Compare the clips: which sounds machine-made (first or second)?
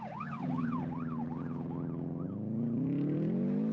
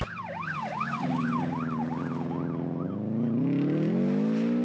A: first